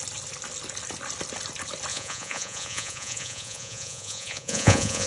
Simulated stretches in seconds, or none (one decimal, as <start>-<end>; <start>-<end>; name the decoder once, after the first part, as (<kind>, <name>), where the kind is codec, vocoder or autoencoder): 1.9-5.1 (vocoder, Vocos)

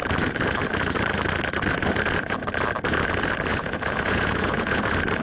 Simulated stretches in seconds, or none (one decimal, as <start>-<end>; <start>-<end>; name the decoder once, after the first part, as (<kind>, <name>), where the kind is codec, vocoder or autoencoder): 3.5-4.8 (vocoder, Vocos)

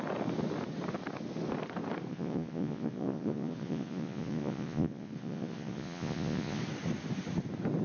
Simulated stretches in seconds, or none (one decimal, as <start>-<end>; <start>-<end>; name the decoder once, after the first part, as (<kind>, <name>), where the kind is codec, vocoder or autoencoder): 2.1-6.6 (vocoder, Vocos)

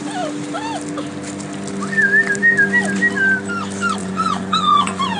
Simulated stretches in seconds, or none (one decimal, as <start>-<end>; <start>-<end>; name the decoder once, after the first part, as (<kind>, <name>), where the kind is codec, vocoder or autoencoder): 4.0-5.2 (vocoder, Vocos)